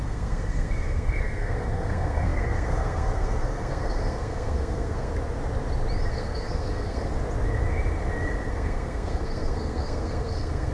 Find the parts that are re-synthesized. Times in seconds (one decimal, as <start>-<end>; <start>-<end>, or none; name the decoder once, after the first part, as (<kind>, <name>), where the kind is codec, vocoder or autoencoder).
0.0-5.1 (codec, SNAC); 6.1-7.1; 8.5-10.7